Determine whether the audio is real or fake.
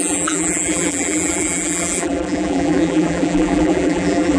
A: fake